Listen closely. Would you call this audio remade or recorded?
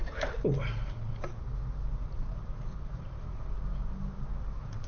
recorded